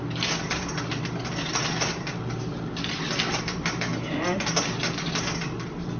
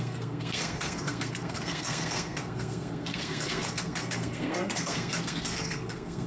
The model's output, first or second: second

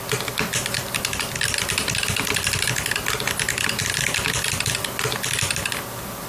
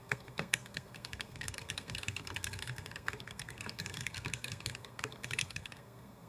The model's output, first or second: second